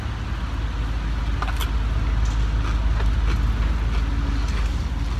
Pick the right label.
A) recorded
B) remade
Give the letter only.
A